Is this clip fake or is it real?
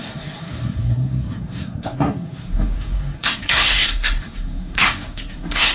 fake